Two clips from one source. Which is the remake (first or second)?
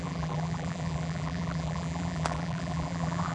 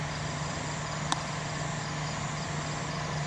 first